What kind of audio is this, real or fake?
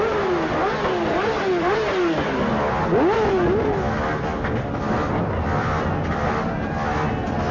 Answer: real